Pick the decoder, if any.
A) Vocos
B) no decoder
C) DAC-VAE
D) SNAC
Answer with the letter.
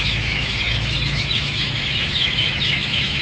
C